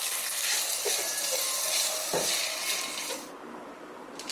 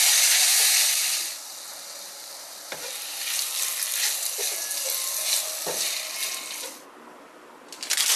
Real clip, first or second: second